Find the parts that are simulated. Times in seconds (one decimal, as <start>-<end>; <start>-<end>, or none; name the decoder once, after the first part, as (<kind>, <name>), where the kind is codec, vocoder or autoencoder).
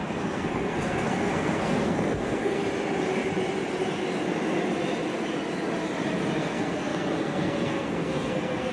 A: 0.0-2.6 (codec, SNAC); 6.4-8.7